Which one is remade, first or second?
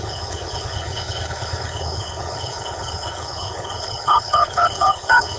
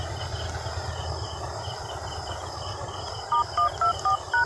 first